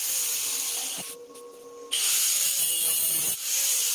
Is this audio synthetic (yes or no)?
no